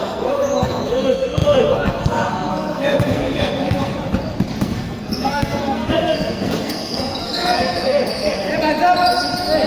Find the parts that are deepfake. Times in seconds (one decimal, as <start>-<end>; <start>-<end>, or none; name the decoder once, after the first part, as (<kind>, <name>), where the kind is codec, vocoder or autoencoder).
0.0-3.9 (codec, SNAC); 4.6-8.5